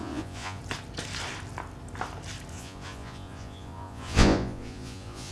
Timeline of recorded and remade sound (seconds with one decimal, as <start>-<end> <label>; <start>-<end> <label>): 0.0-0.6 remade; 0.6-2.5 recorded; 2.5-5.3 remade